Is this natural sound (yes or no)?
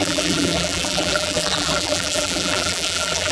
no